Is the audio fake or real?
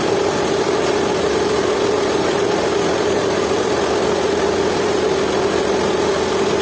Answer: real